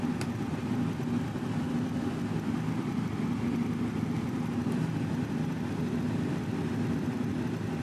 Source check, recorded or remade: recorded